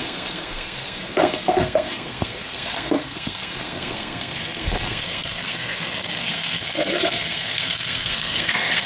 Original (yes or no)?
no